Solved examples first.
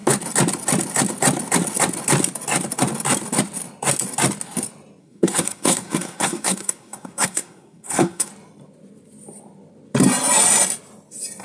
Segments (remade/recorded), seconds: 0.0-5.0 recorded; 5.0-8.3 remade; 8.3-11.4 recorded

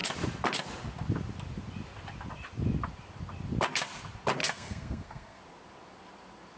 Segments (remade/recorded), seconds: 0.0-4.4 recorded; 4.4-5.4 remade; 5.4-6.6 recorded

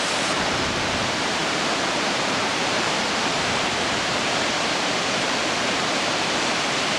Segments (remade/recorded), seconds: 0.0-7.0 remade

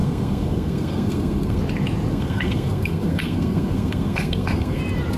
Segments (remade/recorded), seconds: 0.0-1.6 remade; 1.6-2.1 recorded; 2.1-4.8 remade; 4.8-5.2 recorded